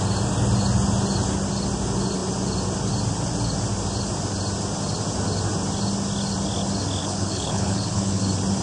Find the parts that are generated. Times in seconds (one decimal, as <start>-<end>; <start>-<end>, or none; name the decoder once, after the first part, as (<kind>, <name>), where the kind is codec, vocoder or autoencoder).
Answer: 7.0-8.2 (codec, HILCodec)

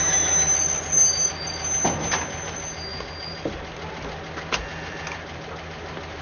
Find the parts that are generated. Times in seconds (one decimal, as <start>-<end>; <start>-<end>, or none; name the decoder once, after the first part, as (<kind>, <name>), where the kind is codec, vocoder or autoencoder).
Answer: none

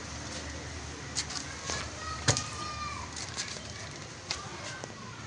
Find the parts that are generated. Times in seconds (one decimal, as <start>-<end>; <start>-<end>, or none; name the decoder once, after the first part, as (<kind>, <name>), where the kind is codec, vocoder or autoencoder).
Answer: none

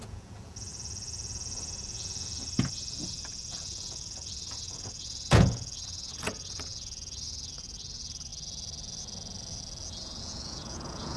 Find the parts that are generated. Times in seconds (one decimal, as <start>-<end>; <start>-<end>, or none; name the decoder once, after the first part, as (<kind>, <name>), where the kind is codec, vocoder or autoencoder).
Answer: 0.0-8.3 (vocoder, Vocos); 10.2-11.2

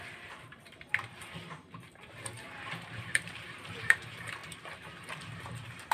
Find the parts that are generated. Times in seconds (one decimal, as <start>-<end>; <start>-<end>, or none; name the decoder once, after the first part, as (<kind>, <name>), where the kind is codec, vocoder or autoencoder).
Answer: 0.0-4.4 (vocoder, BigVGAN v2); 5.0-5.9

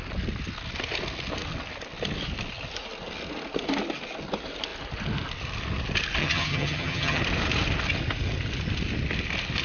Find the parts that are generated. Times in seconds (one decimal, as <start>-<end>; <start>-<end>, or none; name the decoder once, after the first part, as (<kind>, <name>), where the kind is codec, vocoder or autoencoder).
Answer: 6.2-7.2 (vocoder, HiFi-GAN)

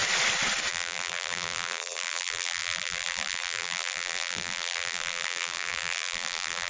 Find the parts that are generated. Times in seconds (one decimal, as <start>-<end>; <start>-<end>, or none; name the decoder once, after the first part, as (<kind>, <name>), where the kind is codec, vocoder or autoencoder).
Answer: 0.7-6.7 (vocoder, BigVGAN v2)

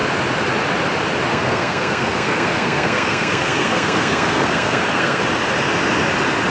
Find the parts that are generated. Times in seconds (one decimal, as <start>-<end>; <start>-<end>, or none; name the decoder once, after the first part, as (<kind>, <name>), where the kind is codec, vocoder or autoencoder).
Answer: 1.3-5.2 (codec, SNAC)